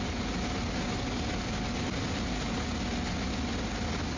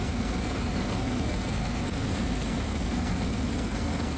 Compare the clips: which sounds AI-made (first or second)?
second